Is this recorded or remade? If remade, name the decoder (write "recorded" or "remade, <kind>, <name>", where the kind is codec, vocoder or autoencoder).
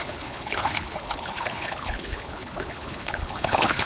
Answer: remade, codec, HILCodec